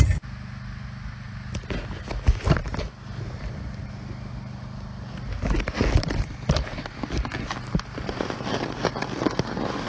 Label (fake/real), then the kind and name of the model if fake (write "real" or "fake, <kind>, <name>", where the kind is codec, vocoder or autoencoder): real